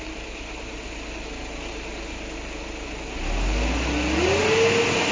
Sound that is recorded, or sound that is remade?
recorded